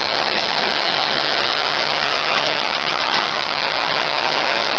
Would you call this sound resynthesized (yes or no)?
yes